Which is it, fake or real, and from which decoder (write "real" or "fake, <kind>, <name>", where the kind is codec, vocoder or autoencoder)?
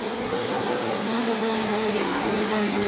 fake, codec, SNAC